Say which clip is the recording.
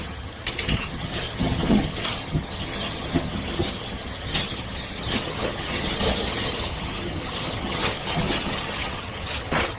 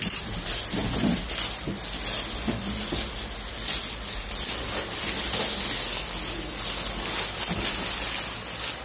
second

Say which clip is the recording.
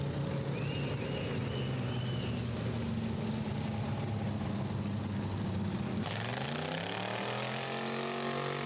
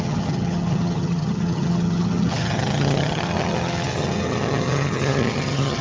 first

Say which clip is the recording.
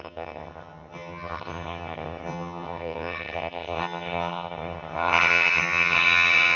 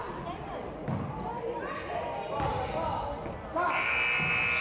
second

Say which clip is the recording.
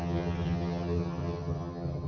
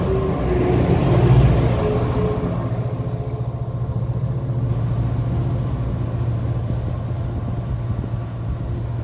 second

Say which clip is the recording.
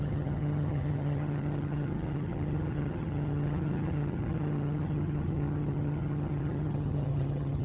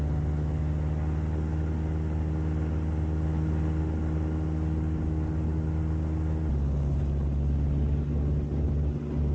second